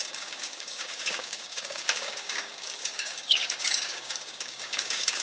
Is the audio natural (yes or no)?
no